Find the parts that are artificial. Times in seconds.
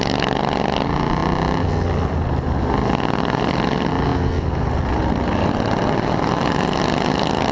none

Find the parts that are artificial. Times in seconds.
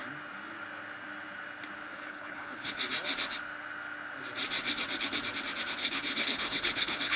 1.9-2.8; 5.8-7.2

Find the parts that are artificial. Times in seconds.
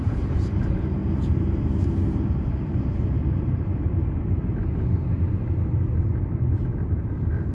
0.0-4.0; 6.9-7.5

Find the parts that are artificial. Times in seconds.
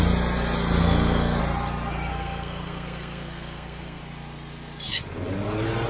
0.8-1.4; 2.1-4.0